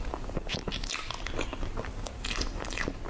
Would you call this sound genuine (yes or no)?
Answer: yes